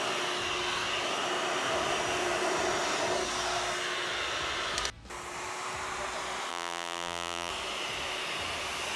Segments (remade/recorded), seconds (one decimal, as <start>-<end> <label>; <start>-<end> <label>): 0.0-6.5 recorded; 6.5-7.5 remade; 7.5-9.0 recorded